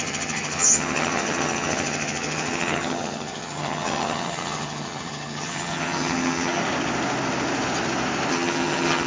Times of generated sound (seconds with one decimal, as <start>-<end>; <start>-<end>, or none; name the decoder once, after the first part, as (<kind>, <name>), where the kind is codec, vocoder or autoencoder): 0.0-6.6 (vocoder, HiFi-GAN); 8.3-9.1